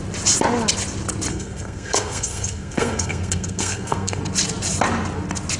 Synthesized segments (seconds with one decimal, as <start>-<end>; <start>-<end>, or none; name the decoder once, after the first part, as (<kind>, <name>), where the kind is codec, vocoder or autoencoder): 1.3-4.2 (codec, SNAC)

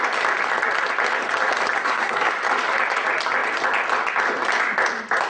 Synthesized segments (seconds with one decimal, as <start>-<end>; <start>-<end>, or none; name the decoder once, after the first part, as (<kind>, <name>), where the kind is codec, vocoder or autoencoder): 1.8-2.3 (codec, SNAC)

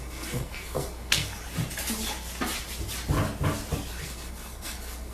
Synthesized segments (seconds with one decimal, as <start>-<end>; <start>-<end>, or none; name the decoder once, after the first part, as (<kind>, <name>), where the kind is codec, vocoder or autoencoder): 0.0-1.4 (codec, SNAC); 4.0-5.1

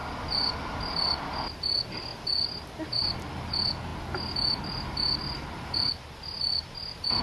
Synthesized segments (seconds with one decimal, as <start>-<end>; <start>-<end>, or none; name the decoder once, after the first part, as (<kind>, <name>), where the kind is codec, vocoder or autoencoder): none